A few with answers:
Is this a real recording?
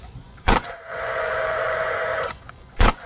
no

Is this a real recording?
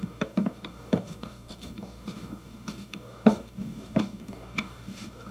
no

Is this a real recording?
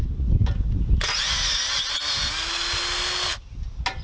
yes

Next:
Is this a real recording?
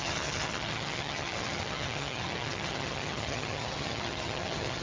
no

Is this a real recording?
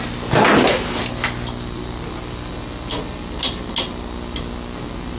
yes